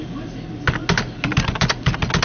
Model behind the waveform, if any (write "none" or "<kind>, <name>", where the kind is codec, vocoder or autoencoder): none